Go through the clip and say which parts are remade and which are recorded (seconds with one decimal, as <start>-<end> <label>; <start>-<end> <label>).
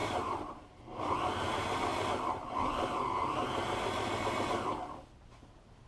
0.0-0.8 remade; 0.8-5.9 recorded